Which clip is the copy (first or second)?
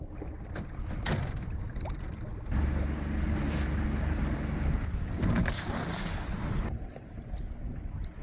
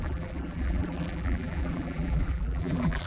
second